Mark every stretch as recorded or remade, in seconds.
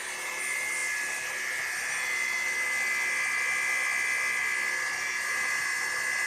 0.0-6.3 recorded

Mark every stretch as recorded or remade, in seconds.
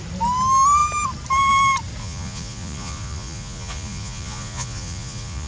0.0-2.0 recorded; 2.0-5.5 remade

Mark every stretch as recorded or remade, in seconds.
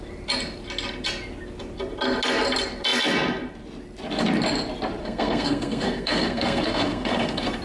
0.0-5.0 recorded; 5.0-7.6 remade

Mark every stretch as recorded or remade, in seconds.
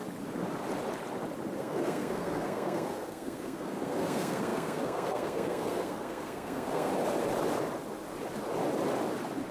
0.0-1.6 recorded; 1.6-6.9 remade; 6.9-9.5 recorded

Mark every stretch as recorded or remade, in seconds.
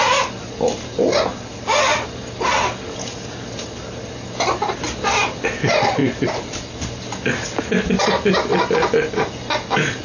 0.0-10.0 recorded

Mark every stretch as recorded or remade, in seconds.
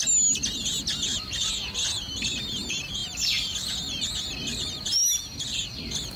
0.0-6.2 recorded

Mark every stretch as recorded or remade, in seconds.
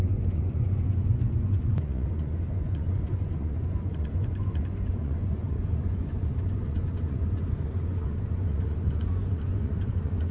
0.0-10.3 remade